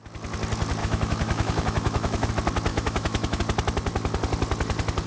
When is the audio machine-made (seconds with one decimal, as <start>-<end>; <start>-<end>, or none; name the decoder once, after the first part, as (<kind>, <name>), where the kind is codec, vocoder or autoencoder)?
0.8-2.3 (autoencoder, DAC-VAE); 2.7-3.4